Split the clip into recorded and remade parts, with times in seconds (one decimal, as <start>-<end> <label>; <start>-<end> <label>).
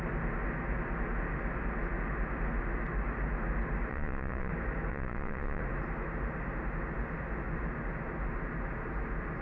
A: 0.0-3.9 recorded; 3.9-4.5 remade; 4.5-4.9 recorded; 4.9-5.6 remade; 5.6-9.4 recorded